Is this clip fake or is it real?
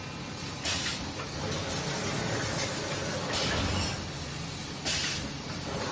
real